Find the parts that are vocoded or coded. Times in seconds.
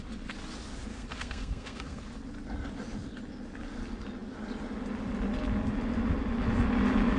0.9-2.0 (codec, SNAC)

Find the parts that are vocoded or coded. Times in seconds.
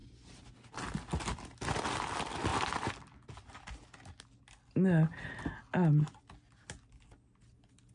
none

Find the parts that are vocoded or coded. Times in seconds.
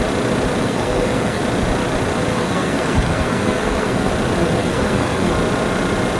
0.6-1.4 (codec, SNAC); 2.3-4.1; 4.6-5.3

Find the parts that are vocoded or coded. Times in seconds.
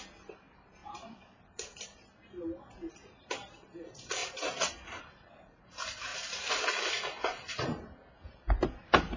0.0-9.2 (vocoder, BigVGAN v2)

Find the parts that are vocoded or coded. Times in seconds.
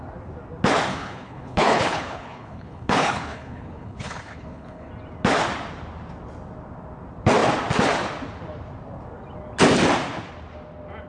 0.9-4.9 (codec, HILCodec)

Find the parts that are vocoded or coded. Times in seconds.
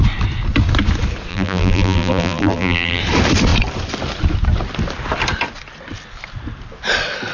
1.3-3.0 (vocoder, BigVGAN v2)